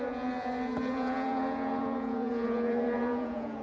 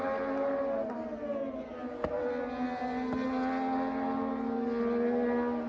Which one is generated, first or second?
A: first